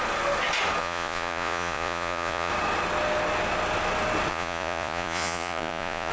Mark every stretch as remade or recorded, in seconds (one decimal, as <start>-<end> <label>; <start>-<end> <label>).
0.0-0.8 recorded; 0.8-2.5 remade; 2.5-4.3 recorded; 4.3-6.1 remade